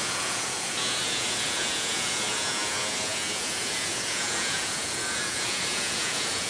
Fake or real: fake